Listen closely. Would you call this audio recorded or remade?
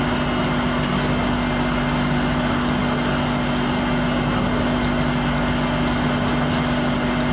recorded